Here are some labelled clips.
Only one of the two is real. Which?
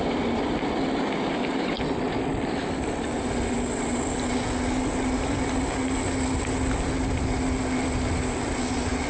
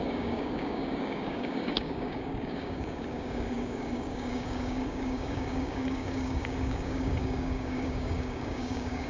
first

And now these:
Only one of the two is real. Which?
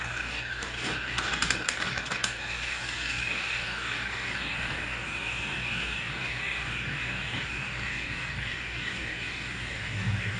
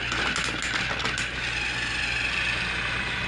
second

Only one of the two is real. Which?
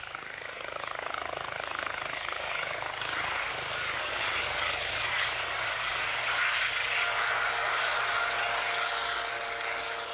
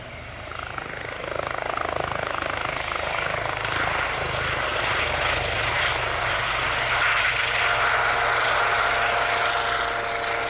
second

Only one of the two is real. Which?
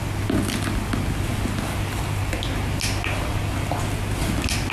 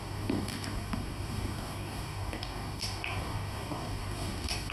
first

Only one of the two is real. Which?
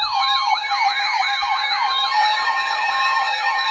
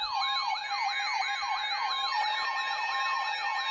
second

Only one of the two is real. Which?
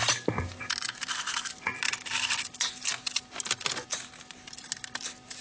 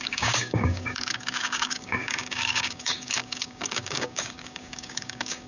first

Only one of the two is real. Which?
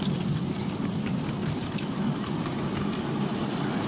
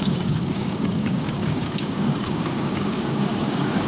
first